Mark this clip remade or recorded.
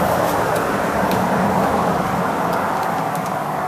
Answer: remade